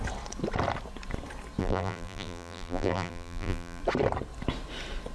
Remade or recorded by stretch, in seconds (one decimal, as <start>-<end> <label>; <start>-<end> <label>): 0.0-1.6 recorded; 1.6-3.8 remade; 3.8-5.1 recorded

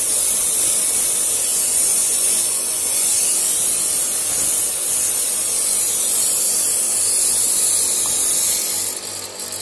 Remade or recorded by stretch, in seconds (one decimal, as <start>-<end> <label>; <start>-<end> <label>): 0.0-1.5 recorded; 1.5-3.2 remade; 3.2-9.6 recorded